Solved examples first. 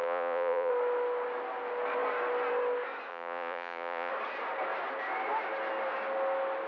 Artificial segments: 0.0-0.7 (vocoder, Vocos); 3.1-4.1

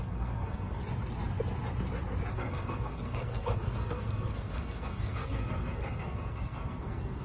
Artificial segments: 0.0-0.8 (codec, SNAC); 2.3-7.2

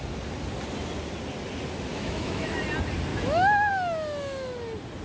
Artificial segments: 1.9-2.6 (autoencoder, DAC-VAE); 3.1-3.7

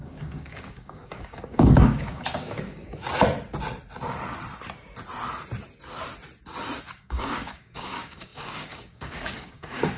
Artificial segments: 0.0-3.0 (codec, DAC); 7.0-10.0